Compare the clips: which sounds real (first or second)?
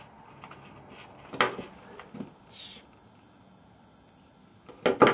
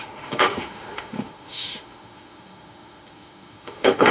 first